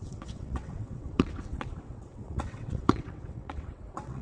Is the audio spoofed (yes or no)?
yes